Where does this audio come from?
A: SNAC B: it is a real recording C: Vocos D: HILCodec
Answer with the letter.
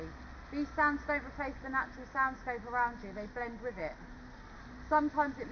B